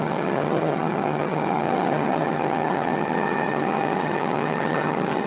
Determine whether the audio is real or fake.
fake